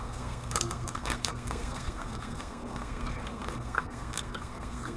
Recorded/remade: remade